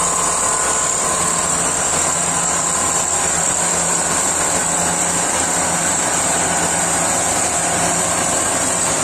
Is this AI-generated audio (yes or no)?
no